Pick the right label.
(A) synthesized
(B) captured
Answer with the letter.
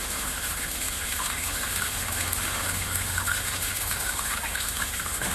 A